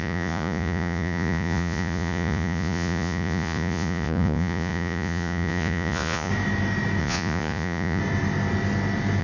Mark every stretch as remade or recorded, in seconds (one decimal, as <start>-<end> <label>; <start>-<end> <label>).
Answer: 0.0-6.3 remade; 6.3-7.0 recorded; 7.0-8.0 remade; 8.0-9.2 recorded